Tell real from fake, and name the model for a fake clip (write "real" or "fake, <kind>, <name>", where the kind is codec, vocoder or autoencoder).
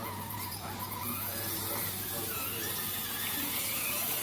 fake, vocoder, Vocos